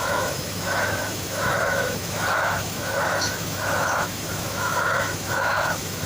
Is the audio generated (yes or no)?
yes